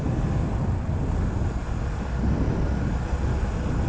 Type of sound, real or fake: real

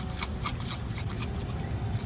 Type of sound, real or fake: real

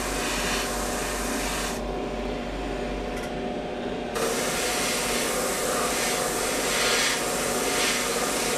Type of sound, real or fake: real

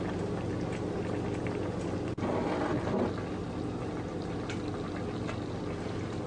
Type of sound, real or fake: real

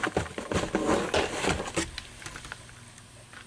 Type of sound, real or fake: real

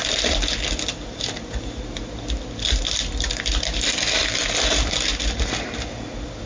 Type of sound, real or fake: fake